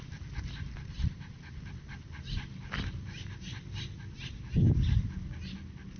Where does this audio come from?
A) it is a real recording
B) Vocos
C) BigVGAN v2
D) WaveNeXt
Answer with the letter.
A